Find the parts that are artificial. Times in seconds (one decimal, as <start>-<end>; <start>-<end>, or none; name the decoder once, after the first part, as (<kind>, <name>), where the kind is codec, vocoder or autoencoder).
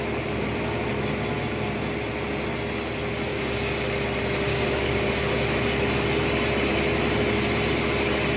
3.3-3.8 (codec, DAC); 4.5-5.1